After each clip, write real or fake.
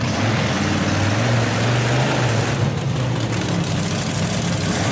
real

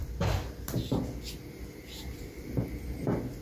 real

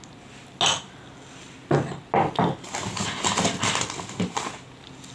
real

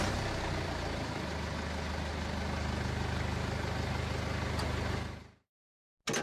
real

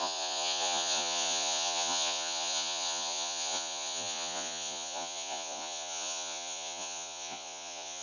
fake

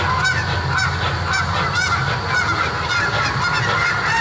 real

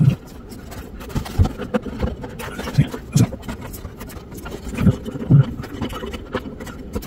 real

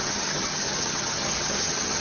fake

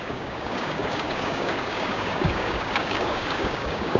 fake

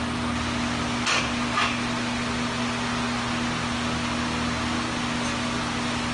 real